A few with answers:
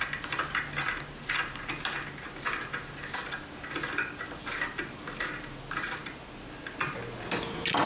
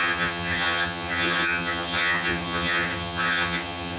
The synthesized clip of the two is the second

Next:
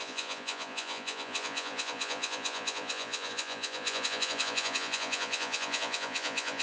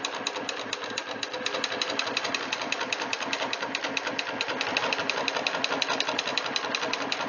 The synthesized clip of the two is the first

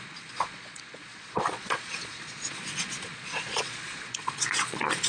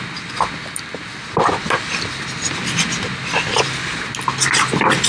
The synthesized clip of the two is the first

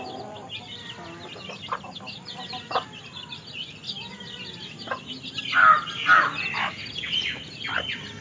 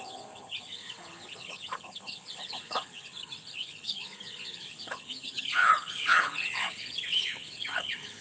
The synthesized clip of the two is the second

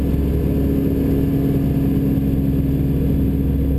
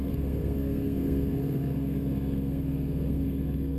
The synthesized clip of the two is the second